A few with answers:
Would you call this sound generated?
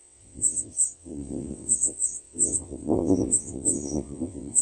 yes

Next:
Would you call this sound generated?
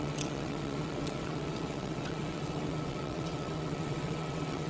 yes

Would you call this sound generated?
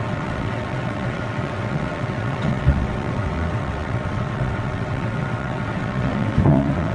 yes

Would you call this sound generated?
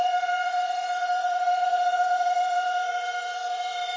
yes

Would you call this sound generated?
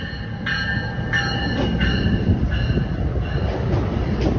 no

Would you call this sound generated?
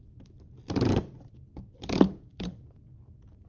no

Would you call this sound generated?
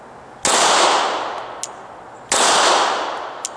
no